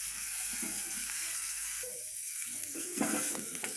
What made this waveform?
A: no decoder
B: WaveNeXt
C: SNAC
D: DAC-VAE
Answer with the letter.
C